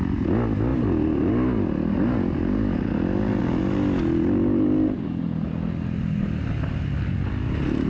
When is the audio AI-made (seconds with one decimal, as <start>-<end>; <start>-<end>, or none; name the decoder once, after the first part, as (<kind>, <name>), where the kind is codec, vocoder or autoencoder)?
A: none